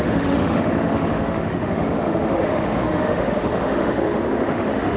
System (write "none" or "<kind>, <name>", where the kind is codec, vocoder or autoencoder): autoencoder, DAC-VAE